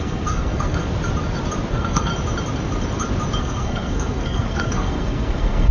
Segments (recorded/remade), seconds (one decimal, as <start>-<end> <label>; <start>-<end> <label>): 0.0-0.8 remade; 0.8-1.7 recorded; 1.7-2.1 remade; 2.1-3.4 recorded; 3.4-5.7 remade